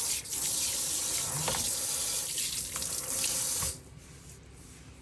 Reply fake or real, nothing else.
real